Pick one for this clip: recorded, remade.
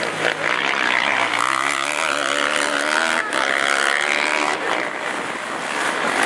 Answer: recorded